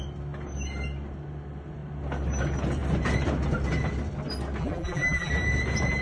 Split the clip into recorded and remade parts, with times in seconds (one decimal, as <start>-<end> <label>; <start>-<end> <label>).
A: 0.0-4.6 recorded; 4.6-5.3 remade; 5.3-6.0 recorded